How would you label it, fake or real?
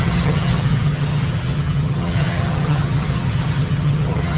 fake